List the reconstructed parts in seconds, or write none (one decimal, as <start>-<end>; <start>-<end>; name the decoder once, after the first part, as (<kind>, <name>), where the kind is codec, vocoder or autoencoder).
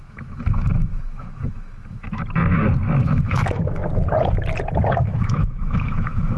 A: 0.0-2.2 (autoencoder, DAC-VAE); 3.0-3.8; 4.9-6.4